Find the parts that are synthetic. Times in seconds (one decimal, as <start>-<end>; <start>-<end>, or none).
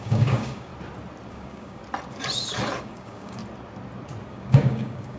0.0-0.7; 1.3-1.8; 2.8-3.4; 4.3-5.2